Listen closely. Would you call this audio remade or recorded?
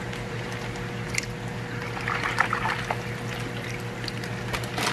recorded